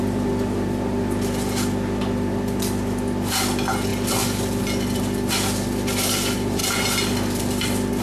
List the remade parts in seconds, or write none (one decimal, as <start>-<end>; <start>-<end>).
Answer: none